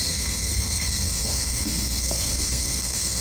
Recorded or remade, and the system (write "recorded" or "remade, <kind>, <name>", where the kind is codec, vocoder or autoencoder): remade, codec, SNAC